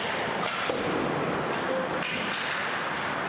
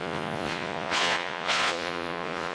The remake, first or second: second